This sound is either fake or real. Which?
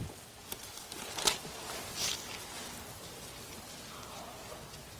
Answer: real